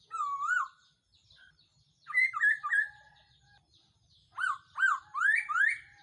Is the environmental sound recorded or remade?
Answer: recorded